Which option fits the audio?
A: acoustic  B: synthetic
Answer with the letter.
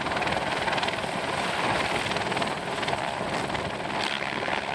A